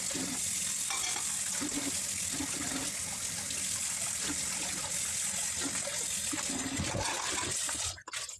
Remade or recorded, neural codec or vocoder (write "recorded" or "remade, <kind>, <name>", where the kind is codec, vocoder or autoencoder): recorded